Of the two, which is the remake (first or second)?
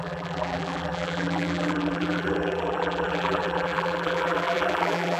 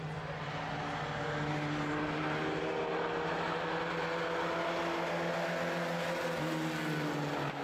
first